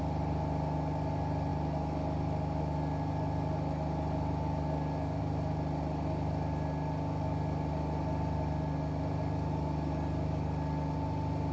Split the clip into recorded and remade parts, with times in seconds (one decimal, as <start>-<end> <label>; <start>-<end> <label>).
0.0-11.5 recorded

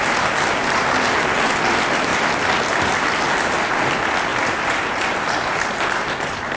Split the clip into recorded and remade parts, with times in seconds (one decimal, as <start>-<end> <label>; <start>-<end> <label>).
0.0-6.6 recorded

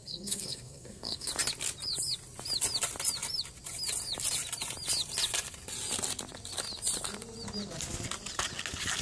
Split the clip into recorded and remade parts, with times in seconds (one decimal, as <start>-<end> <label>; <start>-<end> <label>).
0.0-1.3 remade; 1.3-9.0 recorded

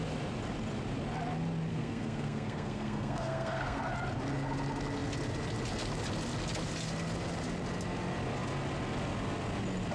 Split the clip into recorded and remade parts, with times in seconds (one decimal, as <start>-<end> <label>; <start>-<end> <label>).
0.0-1.7 recorded; 1.7-3.8 remade; 3.8-9.9 recorded

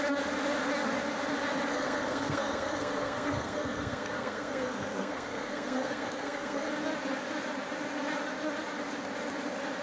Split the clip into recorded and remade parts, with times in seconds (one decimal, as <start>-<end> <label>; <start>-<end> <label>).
0.0-1.7 recorded; 1.7-6.7 remade; 6.7-9.8 recorded

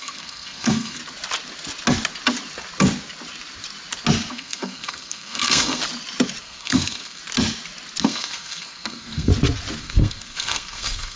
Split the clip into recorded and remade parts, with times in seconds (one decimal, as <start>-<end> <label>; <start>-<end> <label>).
0.0-1.0 remade; 1.0-4.3 recorded; 4.3-5.8 remade; 5.8-6.4 recorded; 6.4-7.2 remade; 7.2-8.0 recorded; 8.0-9.3 remade; 9.3-9.8 recorded; 9.8-11.2 remade

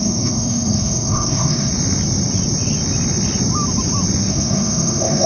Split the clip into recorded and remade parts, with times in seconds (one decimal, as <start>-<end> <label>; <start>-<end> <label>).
0.0-1.7 remade; 1.7-4.3 recorded; 4.3-5.3 remade

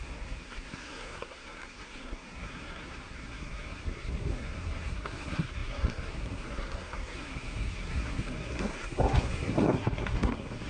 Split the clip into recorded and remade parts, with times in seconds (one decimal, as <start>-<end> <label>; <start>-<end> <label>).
0.0-10.7 remade